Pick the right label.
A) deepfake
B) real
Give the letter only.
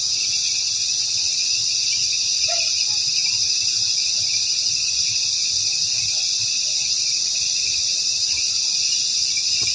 B